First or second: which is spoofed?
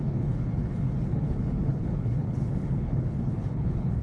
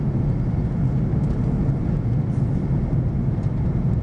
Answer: first